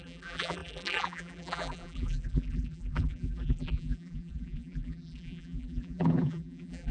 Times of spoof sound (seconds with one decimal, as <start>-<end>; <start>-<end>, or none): 0.0-6.9